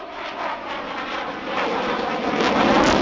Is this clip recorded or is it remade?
recorded